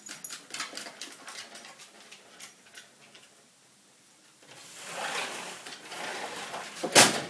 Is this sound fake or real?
real